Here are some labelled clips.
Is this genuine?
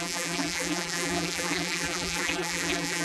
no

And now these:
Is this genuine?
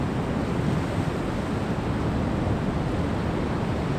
yes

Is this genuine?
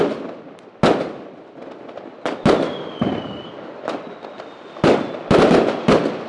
yes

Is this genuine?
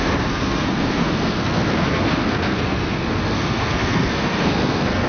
no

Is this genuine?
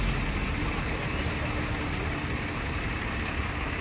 yes